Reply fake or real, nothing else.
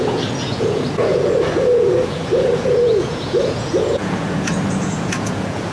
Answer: fake